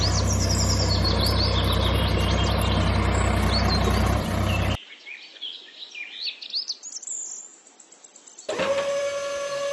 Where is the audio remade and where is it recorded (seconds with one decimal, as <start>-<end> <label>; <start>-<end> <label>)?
0.0-5.3 recorded; 5.3-5.9 remade; 5.9-9.7 recorded